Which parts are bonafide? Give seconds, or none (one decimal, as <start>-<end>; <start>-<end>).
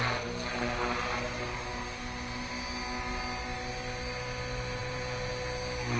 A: 0.0-4.8; 5.3-6.0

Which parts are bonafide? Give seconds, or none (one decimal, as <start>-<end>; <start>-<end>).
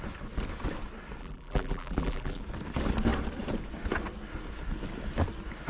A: 0.0-1.2; 2.4-5.7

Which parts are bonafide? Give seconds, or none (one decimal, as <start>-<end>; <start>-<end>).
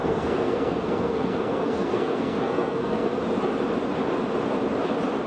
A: 3.2-5.3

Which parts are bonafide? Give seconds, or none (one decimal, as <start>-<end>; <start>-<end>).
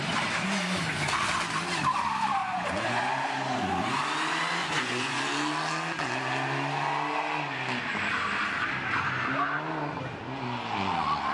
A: 0.0-2.4; 3.0-4.6; 5.2-11.3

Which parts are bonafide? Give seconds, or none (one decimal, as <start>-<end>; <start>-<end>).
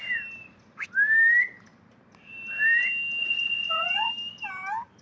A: 0.0-3.2; 4.1-5.0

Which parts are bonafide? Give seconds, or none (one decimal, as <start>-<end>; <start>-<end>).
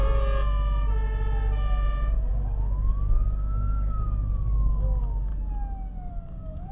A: 0.0-2.3; 5.3-6.1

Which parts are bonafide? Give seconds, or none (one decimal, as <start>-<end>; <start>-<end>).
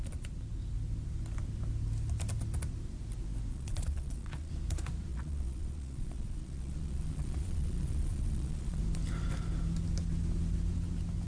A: 0.0-3.5; 4.5-5.1; 8.8-11.3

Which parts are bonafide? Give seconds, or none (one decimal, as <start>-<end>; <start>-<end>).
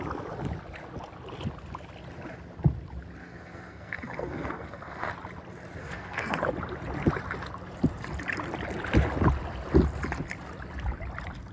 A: 0.0-3.2; 5.1-5.8; 6.4-11.5